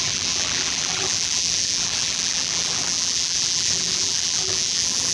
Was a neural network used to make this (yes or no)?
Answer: yes